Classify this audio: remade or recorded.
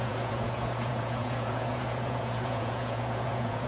remade